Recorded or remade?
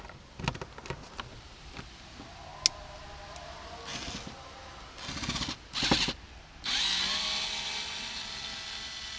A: recorded